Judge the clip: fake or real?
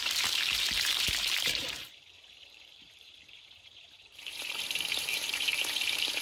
fake